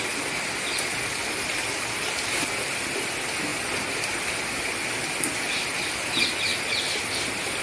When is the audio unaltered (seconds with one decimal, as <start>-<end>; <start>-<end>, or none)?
0.0-7.6